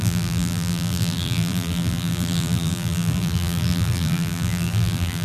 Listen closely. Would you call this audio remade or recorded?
remade